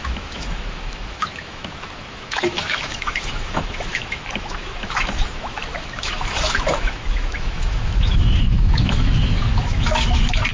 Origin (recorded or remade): remade